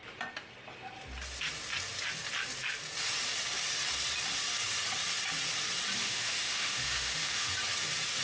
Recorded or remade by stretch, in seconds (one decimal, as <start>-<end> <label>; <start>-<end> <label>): 0.0-6.0 recorded; 6.0-7.5 remade; 7.5-8.2 recorded